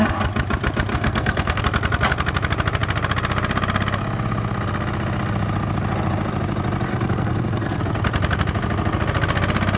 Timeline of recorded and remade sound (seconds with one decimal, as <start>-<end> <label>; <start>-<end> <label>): 0.0-0.9 recorded; 0.9-1.6 remade; 1.6-6.9 recorded; 6.9-7.8 remade; 7.8-9.8 recorded